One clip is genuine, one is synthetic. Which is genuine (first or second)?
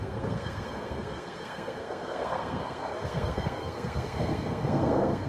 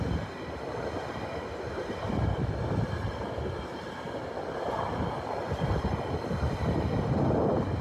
second